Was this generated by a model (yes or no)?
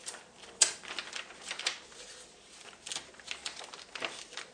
no